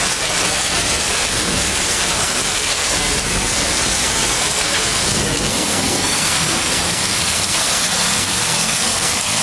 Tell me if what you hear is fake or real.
fake